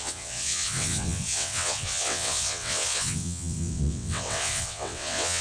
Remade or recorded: remade